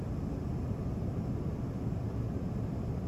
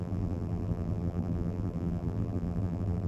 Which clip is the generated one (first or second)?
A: second